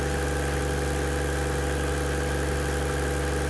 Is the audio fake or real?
real